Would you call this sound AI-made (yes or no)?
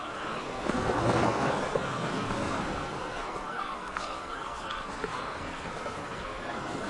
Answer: yes